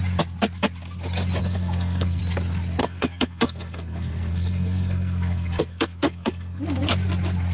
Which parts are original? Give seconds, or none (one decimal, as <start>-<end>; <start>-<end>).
0.0-1.4; 2.2-2.8; 6.6-7.5